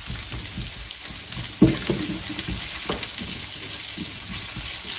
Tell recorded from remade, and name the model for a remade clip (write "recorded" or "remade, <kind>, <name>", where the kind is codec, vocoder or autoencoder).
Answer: recorded